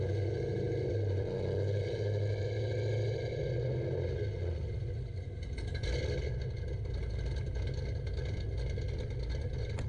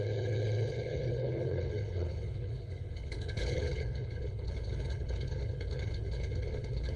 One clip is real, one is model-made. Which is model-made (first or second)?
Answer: second